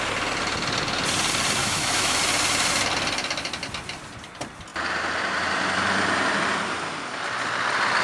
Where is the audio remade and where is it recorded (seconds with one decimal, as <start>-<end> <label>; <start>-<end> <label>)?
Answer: 0.0-1.6 recorded; 1.6-2.2 remade; 2.2-8.0 recorded